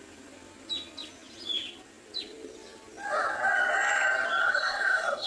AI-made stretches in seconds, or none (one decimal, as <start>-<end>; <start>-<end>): 4.4-5.3